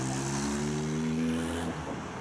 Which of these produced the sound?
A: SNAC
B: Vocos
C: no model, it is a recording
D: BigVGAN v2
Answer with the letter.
C